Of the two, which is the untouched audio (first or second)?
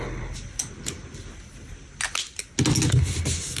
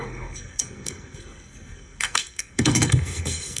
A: first